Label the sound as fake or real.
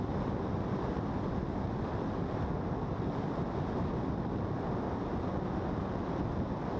real